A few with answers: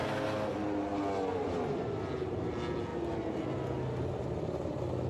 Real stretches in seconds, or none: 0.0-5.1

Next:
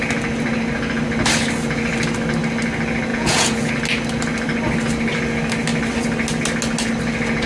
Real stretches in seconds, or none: 0.0-3.1; 3.7-7.5

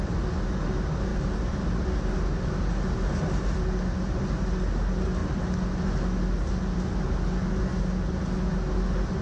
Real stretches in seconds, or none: 0.0-9.2

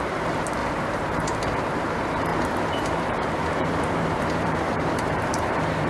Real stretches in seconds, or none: 0.0-0.6; 1.3-2.3

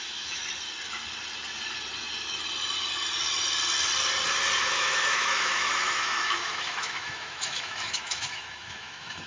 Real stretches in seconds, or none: 0.4-4.6